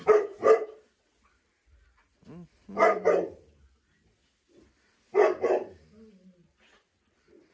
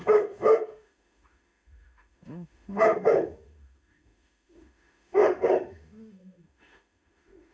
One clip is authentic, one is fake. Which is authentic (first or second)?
first